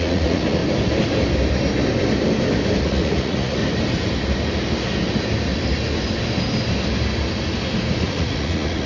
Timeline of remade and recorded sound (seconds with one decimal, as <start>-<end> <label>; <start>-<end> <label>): 0.0-0.6 remade; 0.6-2.8 recorded; 2.8-3.6 remade; 3.6-8.0 recorded; 8.0-8.9 remade